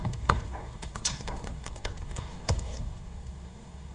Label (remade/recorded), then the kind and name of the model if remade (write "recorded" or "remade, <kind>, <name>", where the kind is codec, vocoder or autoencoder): remade, codec, SNAC